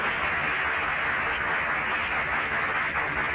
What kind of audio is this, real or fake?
real